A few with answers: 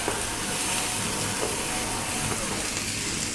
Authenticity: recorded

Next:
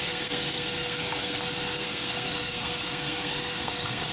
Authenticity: remade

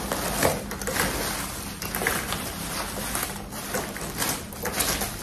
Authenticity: recorded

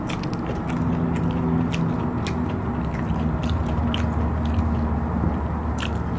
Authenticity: recorded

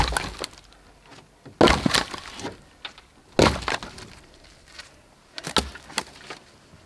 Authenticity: recorded